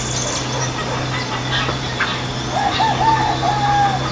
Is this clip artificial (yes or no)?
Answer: no